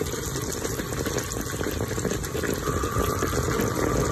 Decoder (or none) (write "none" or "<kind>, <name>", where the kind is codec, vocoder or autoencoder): none